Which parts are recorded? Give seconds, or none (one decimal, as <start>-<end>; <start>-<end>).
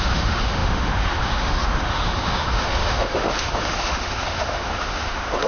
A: none